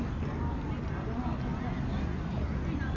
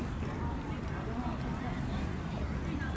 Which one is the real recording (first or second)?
first